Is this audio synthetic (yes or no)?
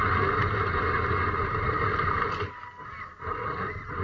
no